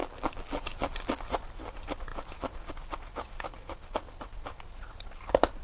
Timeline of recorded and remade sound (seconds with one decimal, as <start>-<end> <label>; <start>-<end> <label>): 0.0-1.3 remade; 1.3-5.6 recorded